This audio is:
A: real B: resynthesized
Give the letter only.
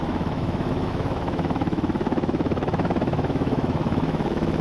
B